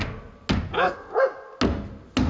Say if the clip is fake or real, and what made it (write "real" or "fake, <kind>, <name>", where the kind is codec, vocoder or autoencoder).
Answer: real